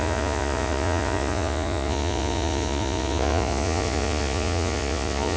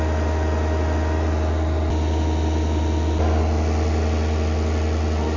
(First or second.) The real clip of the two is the second